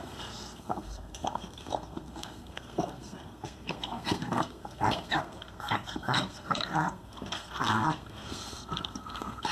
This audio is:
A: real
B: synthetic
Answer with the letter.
B